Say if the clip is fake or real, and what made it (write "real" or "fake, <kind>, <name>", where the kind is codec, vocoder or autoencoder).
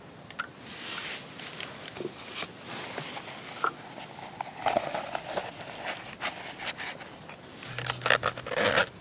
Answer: real